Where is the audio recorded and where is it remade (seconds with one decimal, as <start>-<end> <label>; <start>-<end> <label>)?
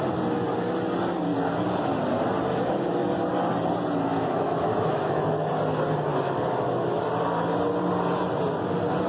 0.0-2.5 recorded; 2.5-3.1 remade; 3.1-4.1 recorded; 4.1-5.5 remade; 5.5-6.1 recorded; 6.1-7.0 remade; 7.0-9.1 recorded